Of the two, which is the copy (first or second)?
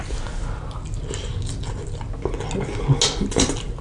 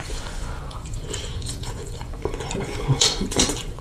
second